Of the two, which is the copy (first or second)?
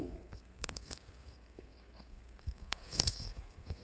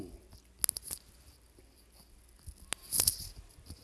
first